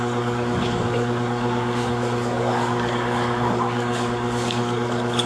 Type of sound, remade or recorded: remade